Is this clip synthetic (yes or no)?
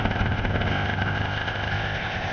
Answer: yes